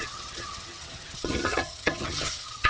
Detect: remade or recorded remade